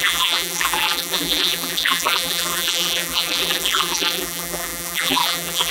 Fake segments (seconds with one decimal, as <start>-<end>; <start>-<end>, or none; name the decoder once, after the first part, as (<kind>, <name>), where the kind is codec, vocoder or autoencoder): 0.0-5.7 (vocoder, BigVGAN v2)